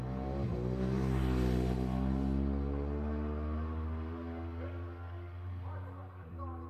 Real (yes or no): yes